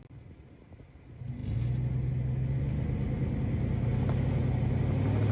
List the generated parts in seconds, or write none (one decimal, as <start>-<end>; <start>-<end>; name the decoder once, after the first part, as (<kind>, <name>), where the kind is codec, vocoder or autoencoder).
none